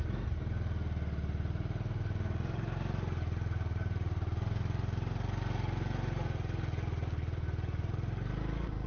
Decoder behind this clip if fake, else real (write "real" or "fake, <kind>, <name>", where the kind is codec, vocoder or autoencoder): real